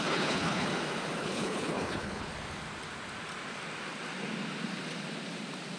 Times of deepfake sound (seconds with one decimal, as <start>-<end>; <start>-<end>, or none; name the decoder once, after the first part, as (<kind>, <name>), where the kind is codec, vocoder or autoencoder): 0.0-0.7 (codec, HILCodec); 1.2-2.3